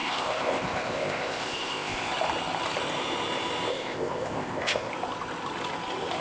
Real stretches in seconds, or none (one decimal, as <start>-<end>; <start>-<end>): 2.1-3.7; 4.9-6.2